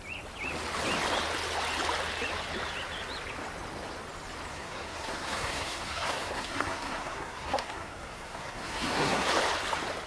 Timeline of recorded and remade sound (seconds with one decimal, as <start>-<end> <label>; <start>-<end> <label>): 0.0-4.5 recorded; 4.5-9.3 remade; 9.3-10.1 recorded